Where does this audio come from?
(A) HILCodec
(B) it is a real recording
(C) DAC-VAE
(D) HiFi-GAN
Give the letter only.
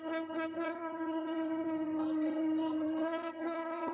D